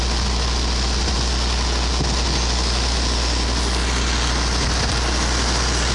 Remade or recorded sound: recorded